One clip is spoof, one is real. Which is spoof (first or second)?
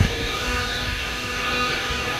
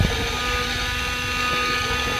first